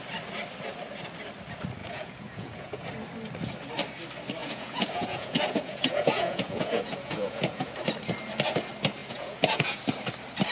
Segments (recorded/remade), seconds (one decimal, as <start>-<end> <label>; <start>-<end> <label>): 0.0-1.8 recorded; 1.8-2.9 remade; 2.9-4.4 recorded; 4.4-7.7 remade; 7.7-9.0 recorded; 9.0-9.8 remade; 9.8-10.5 recorded